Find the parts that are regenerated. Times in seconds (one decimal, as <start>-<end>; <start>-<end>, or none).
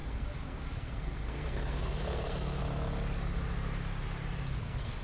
0.0-2.6; 4.6-5.0